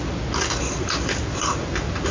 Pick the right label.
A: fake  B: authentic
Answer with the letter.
B